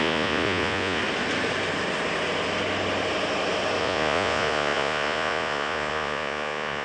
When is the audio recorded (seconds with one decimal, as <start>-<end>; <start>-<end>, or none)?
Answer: 1.0-3.8